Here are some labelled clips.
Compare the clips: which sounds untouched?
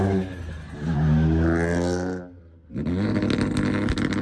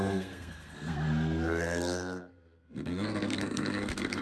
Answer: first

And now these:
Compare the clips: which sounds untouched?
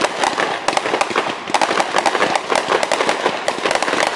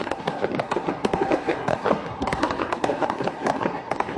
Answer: first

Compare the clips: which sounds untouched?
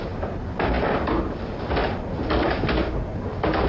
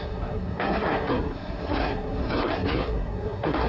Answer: first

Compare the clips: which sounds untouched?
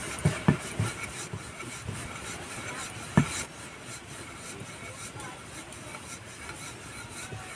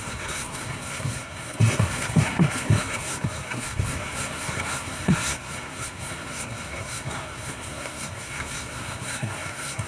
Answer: first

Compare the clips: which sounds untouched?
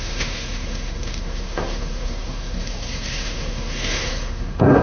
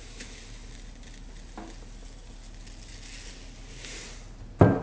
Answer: second